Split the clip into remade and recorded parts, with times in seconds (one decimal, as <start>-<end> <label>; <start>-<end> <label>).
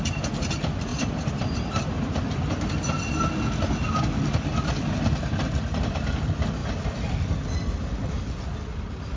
0.0-9.2 recorded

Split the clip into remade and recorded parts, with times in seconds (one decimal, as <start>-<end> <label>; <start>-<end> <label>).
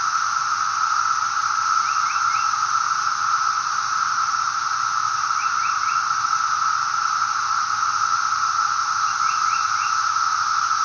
0.0-10.8 recorded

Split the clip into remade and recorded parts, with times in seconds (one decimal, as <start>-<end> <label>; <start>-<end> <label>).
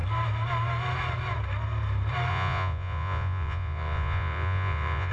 0.0-2.3 recorded; 2.3-5.1 remade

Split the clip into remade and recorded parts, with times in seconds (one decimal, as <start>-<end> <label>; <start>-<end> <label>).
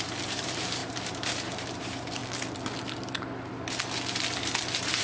0.0-2.2 remade; 2.2-5.0 recorded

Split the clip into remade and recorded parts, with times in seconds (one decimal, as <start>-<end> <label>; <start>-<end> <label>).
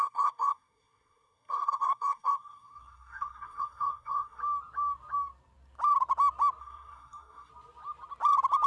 0.0-4.4 remade; 4.4-6.6 recorded; 6.6-7.5 remade; 7.5-8.7 recorded